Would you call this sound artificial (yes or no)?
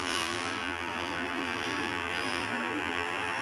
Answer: yes